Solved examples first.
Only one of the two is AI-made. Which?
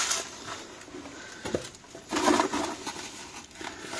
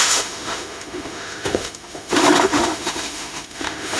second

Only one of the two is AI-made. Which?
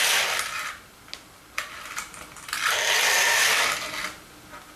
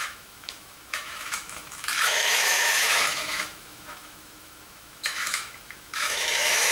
second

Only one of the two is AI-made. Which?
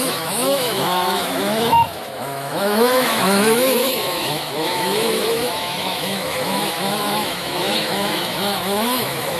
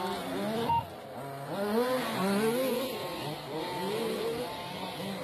first